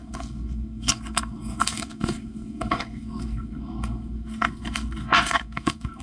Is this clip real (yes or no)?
no